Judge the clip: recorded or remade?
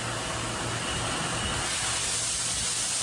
recorded